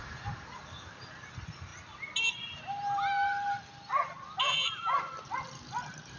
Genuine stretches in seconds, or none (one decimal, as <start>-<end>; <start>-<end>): 0.0-6.2